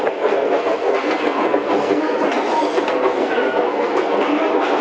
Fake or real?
fake